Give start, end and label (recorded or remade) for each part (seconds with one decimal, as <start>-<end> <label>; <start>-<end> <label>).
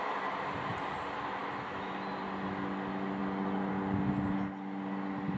0.0-1.4 recorded; 1.4-1.9 remade; 1.9-5.4 recorded